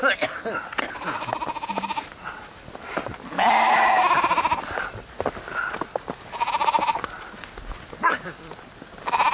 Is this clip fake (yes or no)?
no